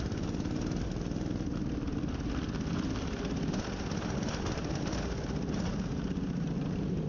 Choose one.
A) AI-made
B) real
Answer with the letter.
B